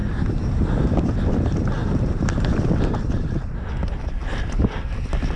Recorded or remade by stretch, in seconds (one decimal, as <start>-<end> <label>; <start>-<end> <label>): 0.0-1.0 remade; 1.0-1.8 recorded; 1.8-3.4 remade; 3.4-4.2 recorded; 4.2-4.7 remade; 4.7-5.4 recorded